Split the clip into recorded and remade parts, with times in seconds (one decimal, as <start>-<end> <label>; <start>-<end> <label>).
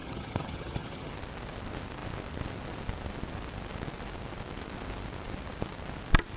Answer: 0.0-1.1 remade; 1.1-6.4 recorded